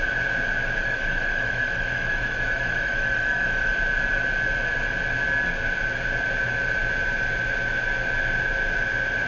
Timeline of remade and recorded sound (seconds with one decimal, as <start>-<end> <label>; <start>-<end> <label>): 0.0-0.8 recorded; 0.8-3.7 remade; 3.7-9.3 recorded